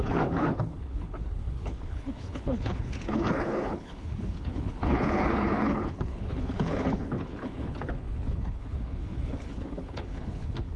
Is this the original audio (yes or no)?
no